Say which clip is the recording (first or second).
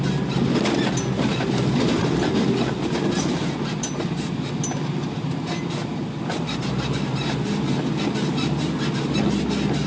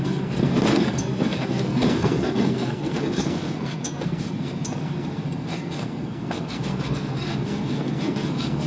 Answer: first